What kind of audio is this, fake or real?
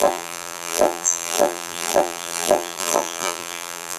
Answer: fake